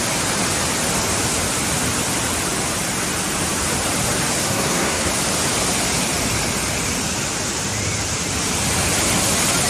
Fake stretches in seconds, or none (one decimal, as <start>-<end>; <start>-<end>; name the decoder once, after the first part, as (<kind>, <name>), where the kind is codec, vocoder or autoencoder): 4.4-5.1 (codec, SNAC)